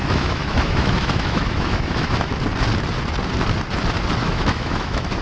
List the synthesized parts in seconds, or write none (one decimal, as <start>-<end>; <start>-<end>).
0.0-2.4; 4.2-5.2